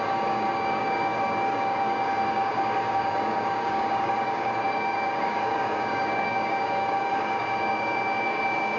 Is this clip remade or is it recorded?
remade